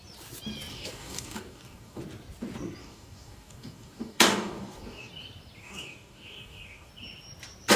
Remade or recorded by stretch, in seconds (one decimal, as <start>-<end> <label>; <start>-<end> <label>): 0.0-0.7 recorded; 0.7-2.0 remade; 2.0-2.8 recorded; 2.8-5.1 remade; 5.1-5.6 recorded; 5.6-6.9 remade; 6.9-7.8 recorded